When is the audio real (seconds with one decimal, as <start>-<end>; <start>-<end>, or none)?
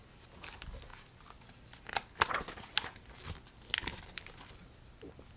0.0-5.4